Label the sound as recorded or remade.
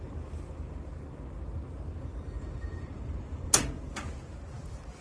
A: recorded